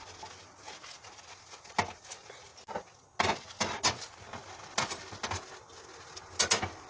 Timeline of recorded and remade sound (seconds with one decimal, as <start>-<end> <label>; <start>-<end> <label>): 0.0-6.9 recorded